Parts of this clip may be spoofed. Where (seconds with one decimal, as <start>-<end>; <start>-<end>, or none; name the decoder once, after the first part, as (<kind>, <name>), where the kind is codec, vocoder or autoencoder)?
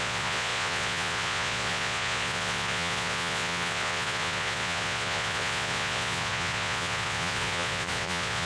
0.0-8.5 (vocoder, Vocos)